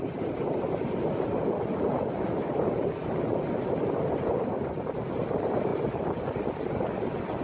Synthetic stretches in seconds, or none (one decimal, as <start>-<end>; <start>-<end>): none